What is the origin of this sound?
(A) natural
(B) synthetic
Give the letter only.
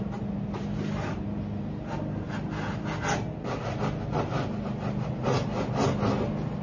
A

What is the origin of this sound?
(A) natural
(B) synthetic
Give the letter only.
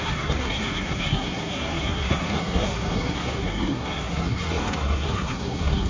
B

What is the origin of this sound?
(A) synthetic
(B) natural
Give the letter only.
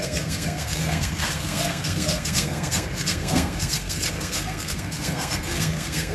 A